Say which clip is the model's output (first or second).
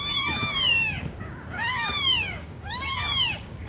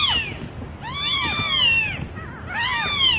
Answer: first